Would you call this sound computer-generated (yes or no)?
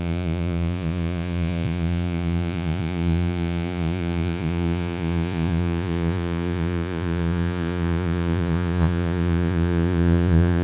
yes